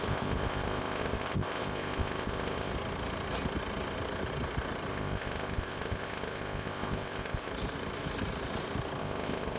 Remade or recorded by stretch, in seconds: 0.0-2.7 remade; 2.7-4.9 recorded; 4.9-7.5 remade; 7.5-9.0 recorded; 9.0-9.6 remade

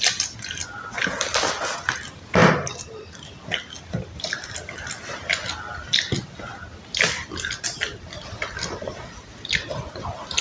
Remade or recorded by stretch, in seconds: 0.0-2.4 recorded; 2.4-3.3 remade; 3.3-10.4 recorded

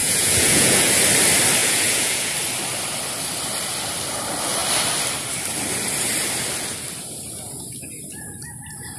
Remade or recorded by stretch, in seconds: 0.0-0.9 remade; 0.9-1.6 recorded; 1.6-2.3 remade; 2.3-9.0 recorded

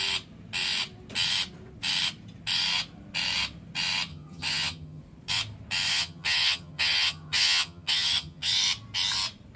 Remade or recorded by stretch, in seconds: 0.0-4.1 recorded; 4.1-5.0 remade; 5.0-5.9 recorded; 5.9-8.5 remade; 8.5-9.6 recorded